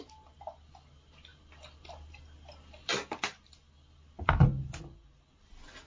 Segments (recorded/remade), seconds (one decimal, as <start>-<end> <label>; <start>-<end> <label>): 0.0-5.9 recorded